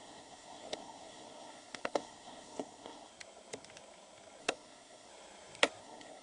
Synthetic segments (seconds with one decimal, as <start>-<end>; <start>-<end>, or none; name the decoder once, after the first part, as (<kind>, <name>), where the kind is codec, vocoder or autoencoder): 0.0-3.1 (codec, SNAC); 4.4-5.1; 5.8-6.2